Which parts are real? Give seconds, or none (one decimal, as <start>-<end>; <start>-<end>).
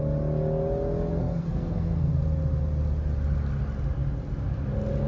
0.0-1.1; 2.1-5.1